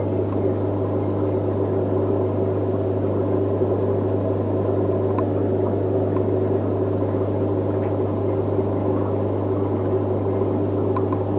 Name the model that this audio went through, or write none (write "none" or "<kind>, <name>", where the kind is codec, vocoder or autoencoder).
none